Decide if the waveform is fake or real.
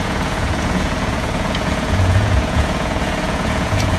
fake